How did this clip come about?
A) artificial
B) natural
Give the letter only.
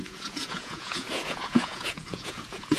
A